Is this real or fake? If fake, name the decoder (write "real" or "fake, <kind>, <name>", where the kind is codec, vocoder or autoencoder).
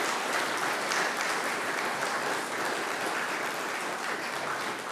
real